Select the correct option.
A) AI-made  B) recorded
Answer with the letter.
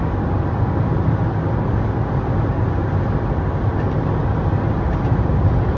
B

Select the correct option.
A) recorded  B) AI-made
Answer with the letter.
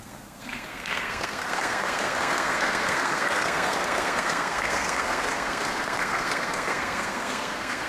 B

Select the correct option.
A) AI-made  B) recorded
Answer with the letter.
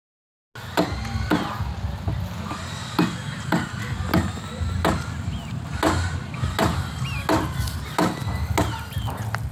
B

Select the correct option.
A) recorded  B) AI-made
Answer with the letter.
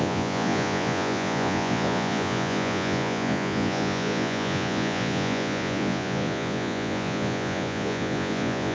B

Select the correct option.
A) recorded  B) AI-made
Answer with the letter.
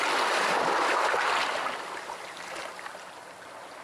A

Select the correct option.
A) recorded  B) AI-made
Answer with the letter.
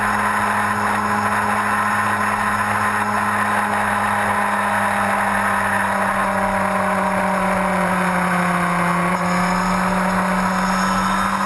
A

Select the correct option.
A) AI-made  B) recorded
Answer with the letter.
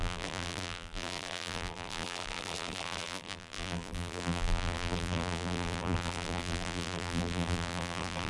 A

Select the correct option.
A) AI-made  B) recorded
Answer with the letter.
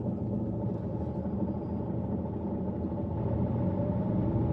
B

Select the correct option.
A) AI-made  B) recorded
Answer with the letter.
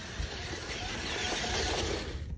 B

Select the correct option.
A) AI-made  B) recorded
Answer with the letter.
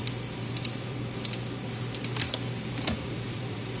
A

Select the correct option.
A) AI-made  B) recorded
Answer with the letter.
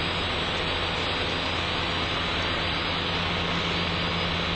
B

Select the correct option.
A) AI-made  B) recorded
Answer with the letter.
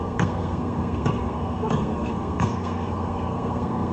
A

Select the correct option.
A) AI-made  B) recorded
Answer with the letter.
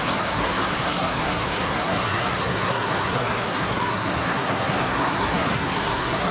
A